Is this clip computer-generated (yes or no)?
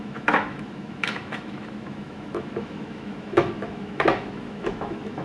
yes